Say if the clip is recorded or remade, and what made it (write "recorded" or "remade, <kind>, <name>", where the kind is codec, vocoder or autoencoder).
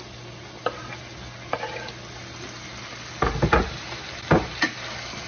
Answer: recorded